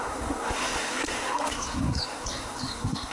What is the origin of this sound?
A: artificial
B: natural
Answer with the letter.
A